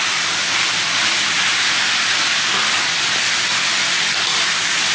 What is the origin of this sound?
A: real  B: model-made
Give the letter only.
B